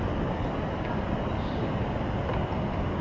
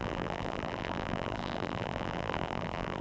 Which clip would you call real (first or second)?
first